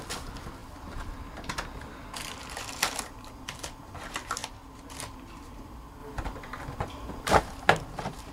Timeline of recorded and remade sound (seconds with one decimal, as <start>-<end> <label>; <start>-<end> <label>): 0.0-4.4 remade; 4.4-4.9 recorded; 4.9-6.0 remade; 6.0-7.3 recorded; 7.3-8.3 remade